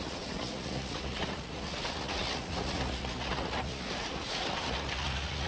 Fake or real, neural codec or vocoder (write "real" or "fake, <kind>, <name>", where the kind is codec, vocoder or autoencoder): fake, vocoder, Vocos